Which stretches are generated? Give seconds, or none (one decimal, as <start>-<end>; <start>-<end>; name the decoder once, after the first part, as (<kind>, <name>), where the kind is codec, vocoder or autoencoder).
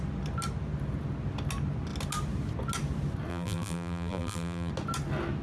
3.3-4.7 (vocoder, BigVGAN v2)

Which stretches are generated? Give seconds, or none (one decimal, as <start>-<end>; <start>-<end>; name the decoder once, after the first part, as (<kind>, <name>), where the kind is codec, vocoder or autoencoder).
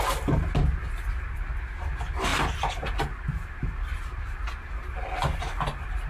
none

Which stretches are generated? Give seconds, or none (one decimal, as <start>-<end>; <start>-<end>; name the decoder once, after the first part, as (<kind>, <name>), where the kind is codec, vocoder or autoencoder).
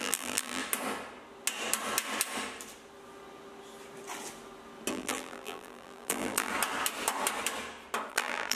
0.0-0.6 (vocoder, BigVGAN v2); 4.9-6.5; 8.1-8.6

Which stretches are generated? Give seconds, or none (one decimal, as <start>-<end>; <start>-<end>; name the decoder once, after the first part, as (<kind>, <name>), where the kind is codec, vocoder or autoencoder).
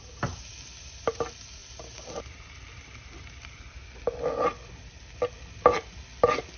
1.6-3.6 (vocoder, BigVGAN v2)